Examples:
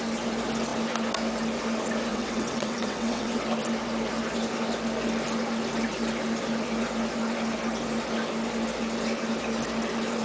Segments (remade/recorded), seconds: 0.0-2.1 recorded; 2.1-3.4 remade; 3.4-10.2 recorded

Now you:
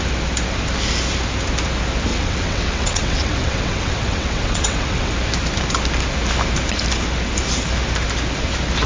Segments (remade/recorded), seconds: 0.0-2.1 recorded; 2.1-5.1 remade; 5.1-8.9 recorded

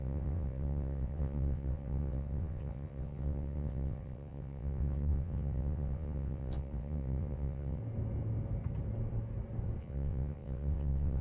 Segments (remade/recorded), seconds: 0.0-7.8 remade; 7.8-9.8 recorded; 9.8-11.2 remade

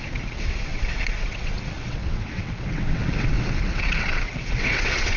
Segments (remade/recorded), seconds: 0.0-5.2 remade